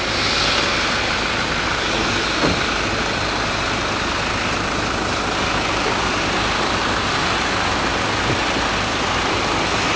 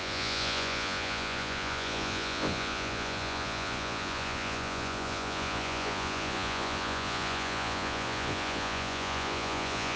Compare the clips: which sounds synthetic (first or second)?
second